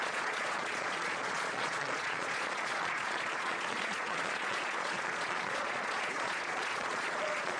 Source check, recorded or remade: remade